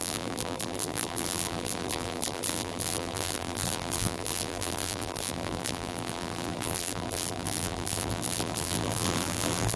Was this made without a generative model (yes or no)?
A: no